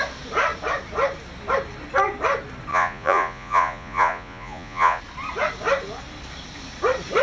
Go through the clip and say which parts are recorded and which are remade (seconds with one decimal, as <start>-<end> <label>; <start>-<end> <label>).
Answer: 0.0-2.7 recorded; 2.7-5.0 remade; 5.0-7.2 recorded